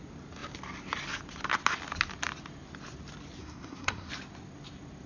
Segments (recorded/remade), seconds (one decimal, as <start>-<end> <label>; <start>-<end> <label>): 0.0-3.4 recorded; 3.4-4.1 remade; 4.1-5.1 recorded